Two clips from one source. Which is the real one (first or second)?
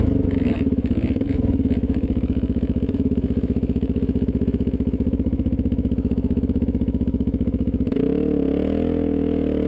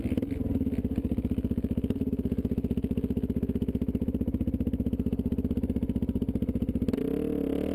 second